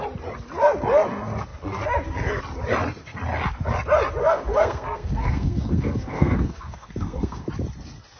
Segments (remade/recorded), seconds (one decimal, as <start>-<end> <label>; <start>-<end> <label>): 0.0-4.2 recorded; 4.2-7.5 remade; 7.5-8.2 recorded